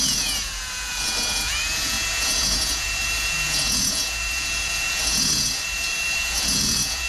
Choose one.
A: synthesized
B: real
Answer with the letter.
A